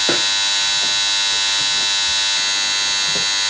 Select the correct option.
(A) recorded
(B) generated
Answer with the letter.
A